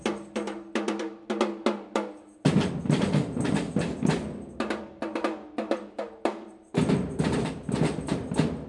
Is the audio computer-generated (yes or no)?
no